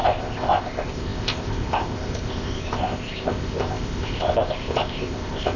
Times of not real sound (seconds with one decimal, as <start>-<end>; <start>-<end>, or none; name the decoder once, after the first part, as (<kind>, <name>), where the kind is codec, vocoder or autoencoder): 0.0-5.6 (codec, ZipCodec)

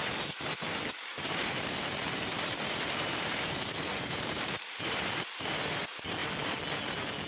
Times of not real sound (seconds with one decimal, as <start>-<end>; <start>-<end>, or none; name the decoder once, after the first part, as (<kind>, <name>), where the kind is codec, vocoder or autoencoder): 1.1-5.5 (vocoder, BigVGAN v2)

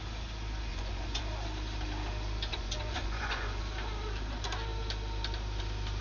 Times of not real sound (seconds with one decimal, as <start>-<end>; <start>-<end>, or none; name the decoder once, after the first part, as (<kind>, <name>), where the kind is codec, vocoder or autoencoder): 0.7-1.2 (vocoder, Vocos); 2.5-3.6

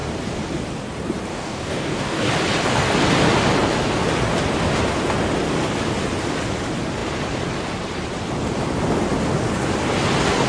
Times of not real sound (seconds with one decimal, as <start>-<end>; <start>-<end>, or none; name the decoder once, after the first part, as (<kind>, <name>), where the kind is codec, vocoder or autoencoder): 1.3-2.3 (codec, DAC)

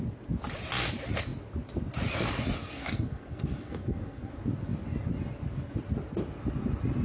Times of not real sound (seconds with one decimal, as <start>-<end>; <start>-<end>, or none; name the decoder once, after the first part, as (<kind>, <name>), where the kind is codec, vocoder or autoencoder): 2.6-4.3 (codec, SNAC)

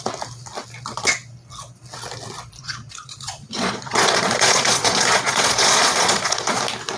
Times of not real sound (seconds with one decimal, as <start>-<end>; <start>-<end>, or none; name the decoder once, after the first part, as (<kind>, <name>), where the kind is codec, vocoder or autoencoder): 2.6-6.6 (vocoder, Vocos)

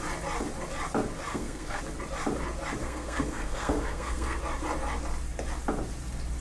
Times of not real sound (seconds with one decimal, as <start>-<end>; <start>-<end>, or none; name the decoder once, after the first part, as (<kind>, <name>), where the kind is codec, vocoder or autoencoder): 1.3-1.8 (codec, SNAC); 2.8-4.4

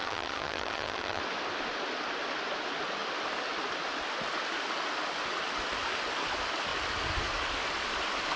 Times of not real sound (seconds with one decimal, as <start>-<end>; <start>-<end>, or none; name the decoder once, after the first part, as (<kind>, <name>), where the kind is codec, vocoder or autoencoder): 0.0-1.2 (vocoder, HiFi-GAN)